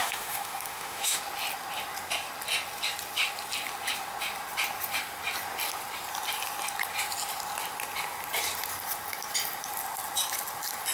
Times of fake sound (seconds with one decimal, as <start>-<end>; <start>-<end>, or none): 0.0-1.2